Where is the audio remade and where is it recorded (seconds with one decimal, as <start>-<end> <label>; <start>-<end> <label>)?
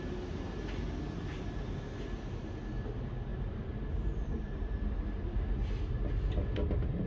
0.0-3.3 recorded; 3.3-5.9 remade; 5.9-7.1 recorded